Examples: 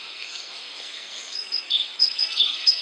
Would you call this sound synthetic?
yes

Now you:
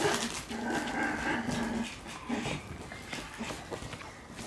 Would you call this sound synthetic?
no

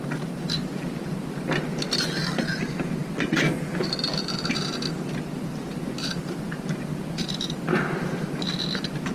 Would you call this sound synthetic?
no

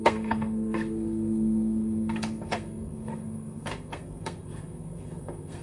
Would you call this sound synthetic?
yes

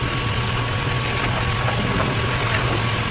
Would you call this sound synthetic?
no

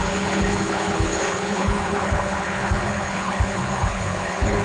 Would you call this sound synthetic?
yes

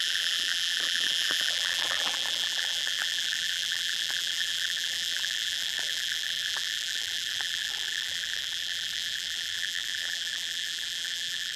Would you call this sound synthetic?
yes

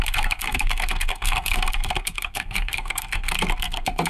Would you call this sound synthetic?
yes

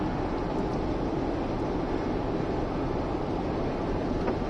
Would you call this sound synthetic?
no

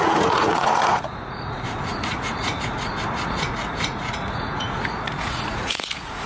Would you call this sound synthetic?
yes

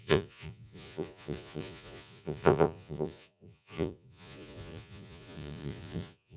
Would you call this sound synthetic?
yes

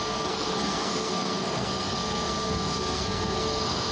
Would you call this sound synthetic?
yes